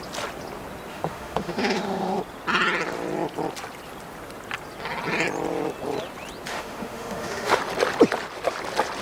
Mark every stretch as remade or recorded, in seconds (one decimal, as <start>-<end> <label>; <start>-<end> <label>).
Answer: 0.0-0.9 recorded; 0.9-2.2 remade; 2.2-6.5 recorded; 6.5-7.6 remade; 7.6-9.0 recorded